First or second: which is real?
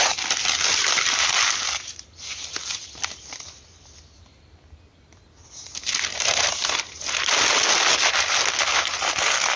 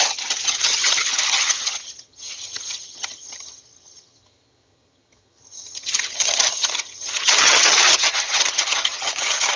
first